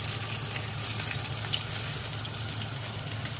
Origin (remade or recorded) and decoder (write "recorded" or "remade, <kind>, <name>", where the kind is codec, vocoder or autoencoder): recorded